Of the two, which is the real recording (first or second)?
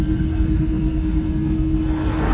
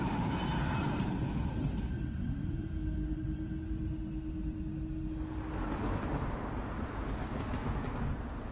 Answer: second